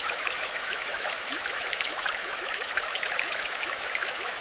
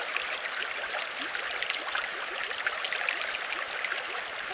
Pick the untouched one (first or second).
second